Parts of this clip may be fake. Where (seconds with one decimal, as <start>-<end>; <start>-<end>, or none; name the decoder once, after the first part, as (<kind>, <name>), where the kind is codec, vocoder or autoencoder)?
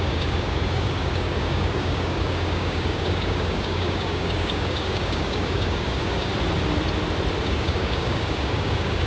0.0-6.3 (codec, DAC); 7.4-9.1